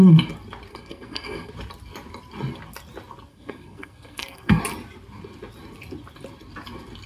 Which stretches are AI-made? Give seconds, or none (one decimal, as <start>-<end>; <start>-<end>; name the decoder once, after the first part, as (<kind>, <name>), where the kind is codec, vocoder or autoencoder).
0.7-1.5 (codec, SNAC); 3.3-4.6